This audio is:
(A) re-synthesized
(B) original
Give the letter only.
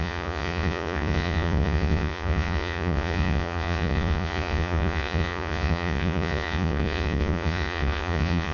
A